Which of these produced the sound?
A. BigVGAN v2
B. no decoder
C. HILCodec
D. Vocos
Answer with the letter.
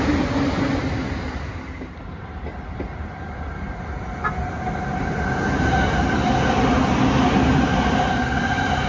B